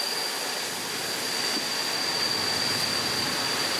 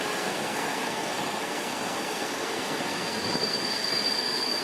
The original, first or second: first